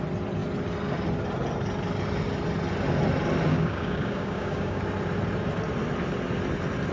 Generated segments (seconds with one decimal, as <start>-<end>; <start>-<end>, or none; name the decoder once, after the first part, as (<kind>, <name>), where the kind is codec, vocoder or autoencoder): 3.5-4.8 (codec, DAC)